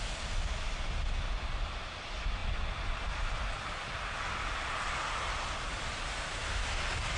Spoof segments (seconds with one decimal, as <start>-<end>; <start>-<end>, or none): 6.3-6.8